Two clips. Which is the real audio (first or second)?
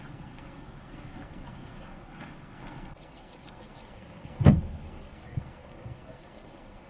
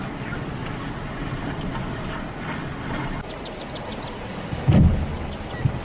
second